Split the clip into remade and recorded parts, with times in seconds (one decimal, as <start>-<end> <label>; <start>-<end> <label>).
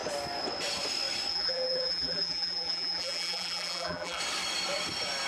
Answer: 0.0-1.3 recorded; 1.3-4.2 remade; 4.2-5.3 recorded